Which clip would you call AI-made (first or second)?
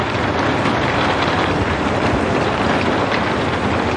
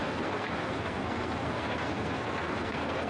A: second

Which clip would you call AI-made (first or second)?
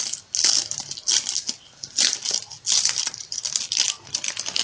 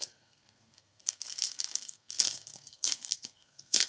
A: second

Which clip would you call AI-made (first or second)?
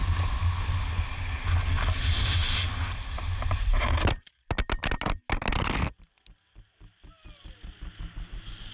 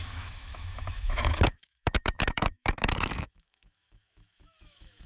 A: second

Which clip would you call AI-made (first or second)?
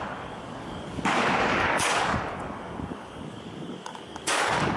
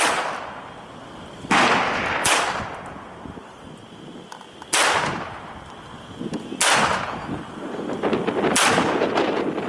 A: first